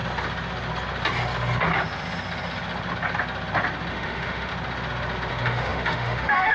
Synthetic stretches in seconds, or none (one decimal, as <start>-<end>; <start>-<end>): 3.9-4.5; 5.3-6.5